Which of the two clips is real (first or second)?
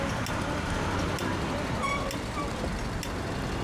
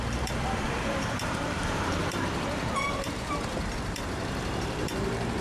first